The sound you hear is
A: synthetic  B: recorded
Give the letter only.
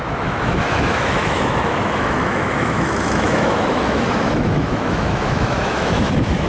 A